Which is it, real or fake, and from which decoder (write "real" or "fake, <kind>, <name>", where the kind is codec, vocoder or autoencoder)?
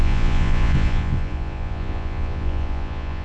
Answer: fake, vocoder, Vocos